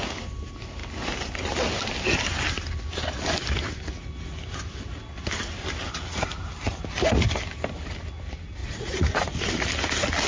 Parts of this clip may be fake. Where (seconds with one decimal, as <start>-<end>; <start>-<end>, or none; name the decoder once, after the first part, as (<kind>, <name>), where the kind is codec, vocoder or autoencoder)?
8.6-9.5 (vocoder, Vocos)